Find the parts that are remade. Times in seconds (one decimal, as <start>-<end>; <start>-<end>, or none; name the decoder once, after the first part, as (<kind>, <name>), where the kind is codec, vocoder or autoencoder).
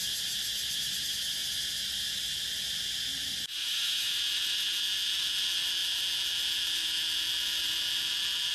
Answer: 3.6-4.1 (autoencoder, DAC-VAE)